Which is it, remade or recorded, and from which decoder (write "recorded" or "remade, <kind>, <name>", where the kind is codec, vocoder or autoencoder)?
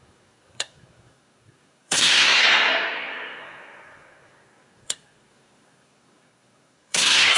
remade, codec, SNAC